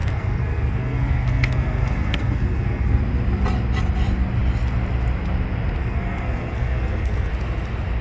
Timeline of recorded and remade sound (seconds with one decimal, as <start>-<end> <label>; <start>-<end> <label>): 0.0-3.0 remade; 3.0-5.8 recorded; 5.8-7.3 remade; 7.3-8.0 recorded